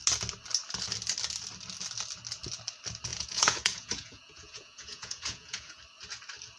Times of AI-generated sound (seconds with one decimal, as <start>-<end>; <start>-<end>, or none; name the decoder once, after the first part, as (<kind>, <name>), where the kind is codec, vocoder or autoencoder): 3.1-5.8 (vocoder, Vocos)